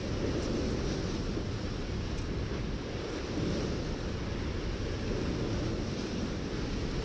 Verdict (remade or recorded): recorded